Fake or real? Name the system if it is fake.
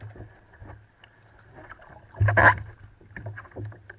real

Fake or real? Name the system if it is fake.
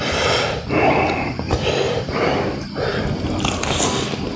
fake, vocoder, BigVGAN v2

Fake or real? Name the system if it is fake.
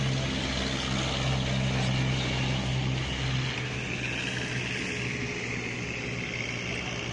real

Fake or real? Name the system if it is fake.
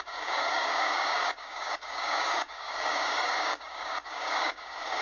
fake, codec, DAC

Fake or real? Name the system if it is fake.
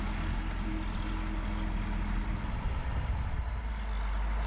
real